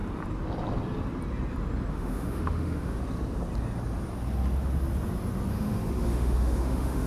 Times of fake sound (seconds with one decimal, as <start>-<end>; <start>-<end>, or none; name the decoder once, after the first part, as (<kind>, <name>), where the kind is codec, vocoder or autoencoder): 1.9-3.0 (autoencoder, DAC-VAE); 5.5-7.1